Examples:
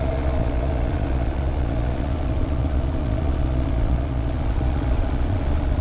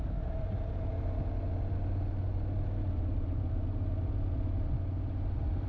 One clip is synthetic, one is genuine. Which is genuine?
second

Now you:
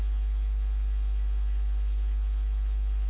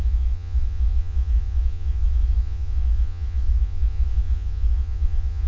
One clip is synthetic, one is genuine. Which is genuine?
first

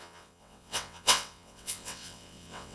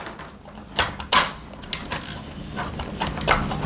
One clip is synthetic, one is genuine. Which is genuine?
second